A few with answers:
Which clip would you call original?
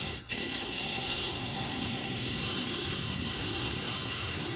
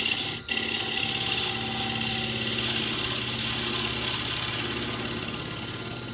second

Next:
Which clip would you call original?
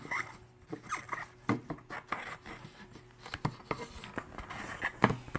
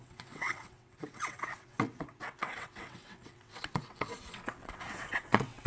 first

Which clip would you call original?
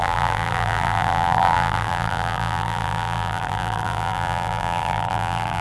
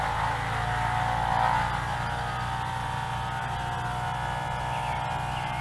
second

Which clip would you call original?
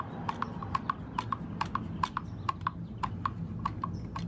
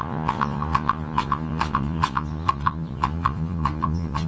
first